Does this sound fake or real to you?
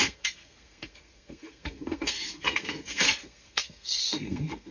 fake